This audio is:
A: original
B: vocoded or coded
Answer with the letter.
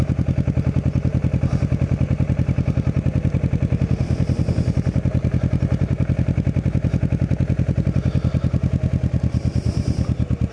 A